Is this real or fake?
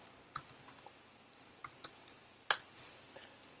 real